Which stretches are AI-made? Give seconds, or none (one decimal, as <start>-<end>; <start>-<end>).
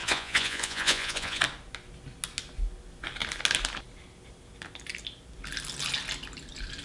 0.0-1.4